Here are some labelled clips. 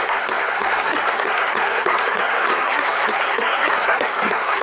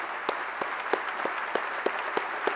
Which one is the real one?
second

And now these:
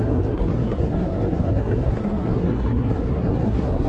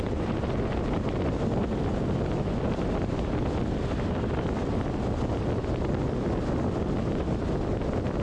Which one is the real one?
second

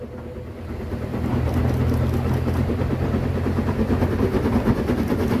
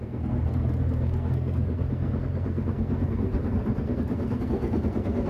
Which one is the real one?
first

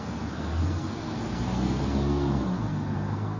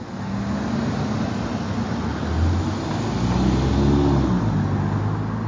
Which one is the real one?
second